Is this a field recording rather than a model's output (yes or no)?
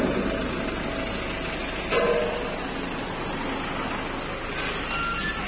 yes